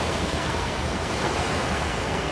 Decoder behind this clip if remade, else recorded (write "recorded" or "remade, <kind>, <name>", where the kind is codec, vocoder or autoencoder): remade, codec, SNAC